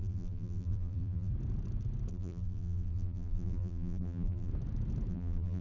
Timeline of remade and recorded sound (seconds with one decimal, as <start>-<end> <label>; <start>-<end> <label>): 0.0-1.3 remade; 1.3-2.1 recorded; 2.1-4.5 remade; 4.5-5.1 recorded; 5.1-5.6 remade